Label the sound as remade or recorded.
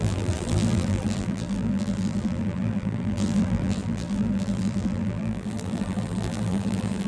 remade